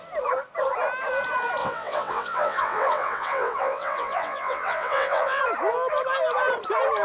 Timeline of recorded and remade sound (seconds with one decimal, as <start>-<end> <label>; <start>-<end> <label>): 0.0-1.6 recorded; 1.6-5.4 remade; 5.4-7.0 recorded